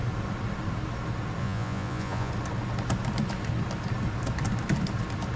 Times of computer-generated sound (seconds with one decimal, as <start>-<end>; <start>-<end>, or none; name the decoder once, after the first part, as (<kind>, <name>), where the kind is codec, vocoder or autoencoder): 1.4-2.3 (vocoder, Vocos)